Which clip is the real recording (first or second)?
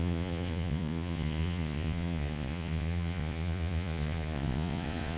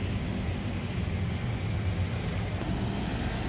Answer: second